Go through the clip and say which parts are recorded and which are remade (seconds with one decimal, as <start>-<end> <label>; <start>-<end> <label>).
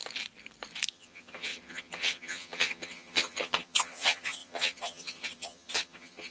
0.0-0.9 recorded; 0.9-6.3 remade